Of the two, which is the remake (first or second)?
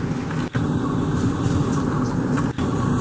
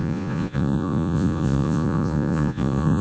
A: second